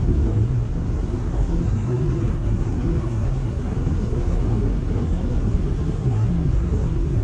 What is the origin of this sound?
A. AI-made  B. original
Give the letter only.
A